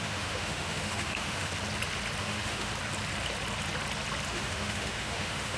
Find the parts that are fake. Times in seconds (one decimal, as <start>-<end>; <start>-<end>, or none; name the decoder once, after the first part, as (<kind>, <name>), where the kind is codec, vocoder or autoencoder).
0.0-1.5 (autoencoder, DAC-VAE); 2.2-2.7; 4.3-5.6